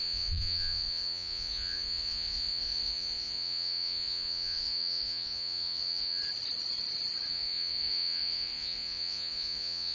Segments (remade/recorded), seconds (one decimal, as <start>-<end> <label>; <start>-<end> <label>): 0.0-6.2 remade; 6.2-7.3 recorded; 7.3-9.9 remade